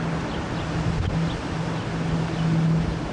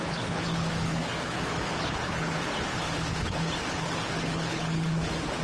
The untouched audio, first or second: first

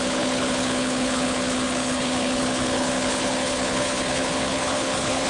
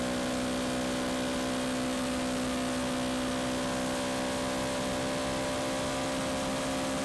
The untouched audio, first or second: second